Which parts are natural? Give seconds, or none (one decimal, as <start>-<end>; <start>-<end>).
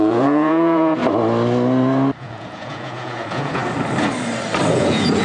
1.0-2.2; 3.6-4.7